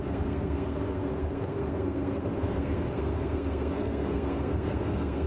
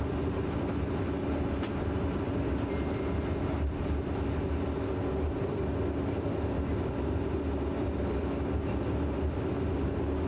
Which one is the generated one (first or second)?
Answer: first